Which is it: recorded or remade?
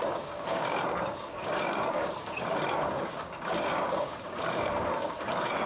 remade